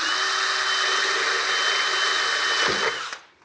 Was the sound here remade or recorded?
recorded